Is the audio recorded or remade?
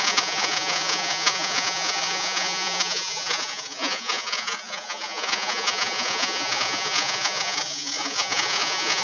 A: remade